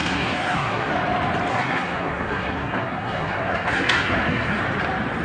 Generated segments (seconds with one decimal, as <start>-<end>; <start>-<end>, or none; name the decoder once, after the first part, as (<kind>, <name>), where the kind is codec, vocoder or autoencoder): 0.0-0.9 (codec, SNAC); 1.5-4.6